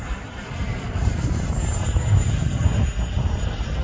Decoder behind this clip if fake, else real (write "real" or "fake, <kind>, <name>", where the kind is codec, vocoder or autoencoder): real